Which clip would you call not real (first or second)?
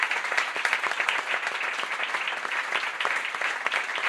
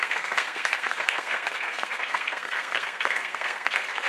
second